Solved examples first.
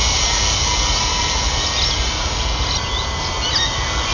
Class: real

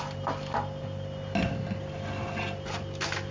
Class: real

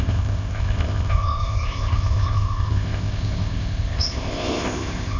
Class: fake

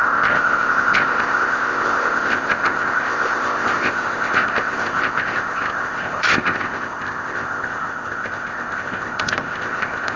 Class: fake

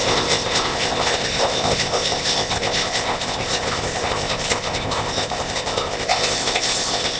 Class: fake